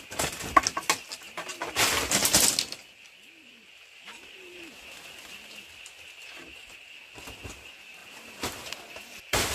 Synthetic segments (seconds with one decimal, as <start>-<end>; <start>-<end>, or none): none